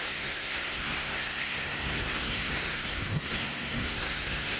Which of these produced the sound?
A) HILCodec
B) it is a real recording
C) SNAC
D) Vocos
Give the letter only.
C